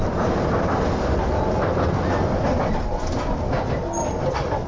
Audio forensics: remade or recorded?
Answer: recorded